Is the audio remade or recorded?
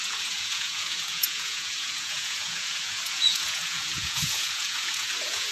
remade